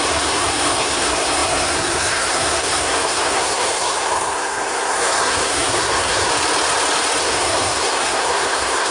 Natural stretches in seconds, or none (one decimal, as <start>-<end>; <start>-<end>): 6.3-7.2